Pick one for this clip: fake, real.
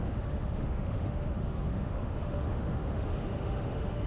fake